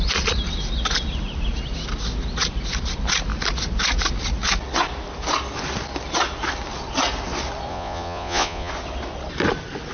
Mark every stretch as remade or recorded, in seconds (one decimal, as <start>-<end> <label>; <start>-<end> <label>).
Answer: 0.0-7.7 recorded; 7.7-8.7 remade; 8.7-9.9 recorded